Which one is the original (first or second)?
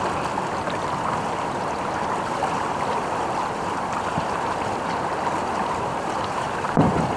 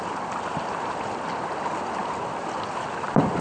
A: second